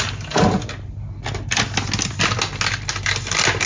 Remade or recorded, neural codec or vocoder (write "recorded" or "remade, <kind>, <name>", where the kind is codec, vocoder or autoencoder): recorded